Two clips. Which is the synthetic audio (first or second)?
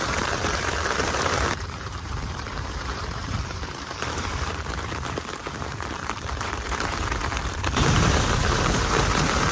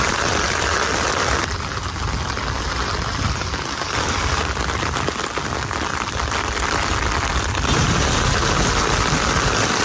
first